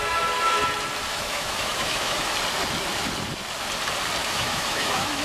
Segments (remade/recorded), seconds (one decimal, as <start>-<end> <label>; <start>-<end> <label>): 0.0-1.1 recorded; 1.1-2.3 remade; 2.3-4.2 recorded; 4.2-5.2 remade

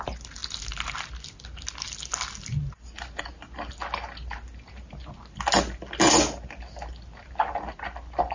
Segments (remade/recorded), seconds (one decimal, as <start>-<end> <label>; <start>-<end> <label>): 0.0-8.3 recorded